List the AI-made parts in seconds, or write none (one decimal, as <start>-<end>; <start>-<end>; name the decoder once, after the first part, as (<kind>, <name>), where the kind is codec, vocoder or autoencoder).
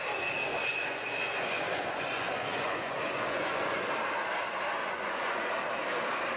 0.5-3.8 (vocoder, Vocos); 4.8-5.5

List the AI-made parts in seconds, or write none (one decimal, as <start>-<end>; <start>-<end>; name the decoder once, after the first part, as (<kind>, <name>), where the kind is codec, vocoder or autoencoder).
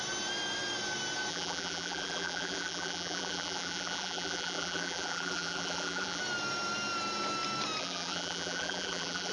1.3-6.2 (vocoder, BigVGAN v2); 7.8-9.3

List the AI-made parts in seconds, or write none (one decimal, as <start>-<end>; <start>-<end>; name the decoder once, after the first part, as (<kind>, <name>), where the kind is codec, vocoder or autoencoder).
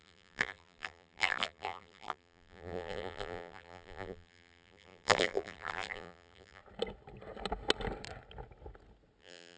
0.0-6.6 (vocoder, BigVGAN v2); 9.2-9.6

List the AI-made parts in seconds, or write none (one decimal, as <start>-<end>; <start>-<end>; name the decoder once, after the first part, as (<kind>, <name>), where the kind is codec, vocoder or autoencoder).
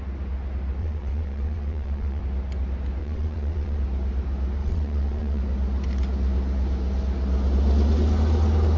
0.8-2.2 (vocoder, WaveNeXt); 3.0-3.8; 4.6-5.4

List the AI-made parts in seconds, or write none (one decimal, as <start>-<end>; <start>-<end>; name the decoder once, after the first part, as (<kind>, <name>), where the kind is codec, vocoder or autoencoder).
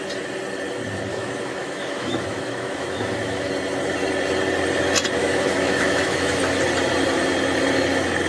1.1-3.5 (autoencoder, DAC-VAE); 5.2-6.4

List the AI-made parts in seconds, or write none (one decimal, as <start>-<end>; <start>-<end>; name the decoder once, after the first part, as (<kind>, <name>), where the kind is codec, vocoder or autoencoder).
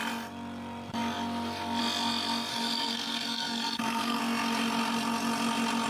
2.5-4.2 (codec, SNAC)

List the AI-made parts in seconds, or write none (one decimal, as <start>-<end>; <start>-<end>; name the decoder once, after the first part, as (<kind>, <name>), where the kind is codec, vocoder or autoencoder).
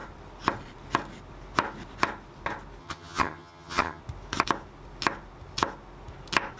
2.8-4.0 (vocoder, HiFi-GAN)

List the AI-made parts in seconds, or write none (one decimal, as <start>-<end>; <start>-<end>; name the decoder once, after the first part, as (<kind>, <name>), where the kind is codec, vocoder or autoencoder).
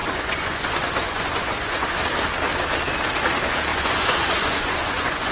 0.0-2.0 (vocoder, Vocos); 3.7-5.3